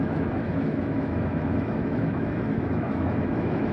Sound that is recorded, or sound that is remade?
remade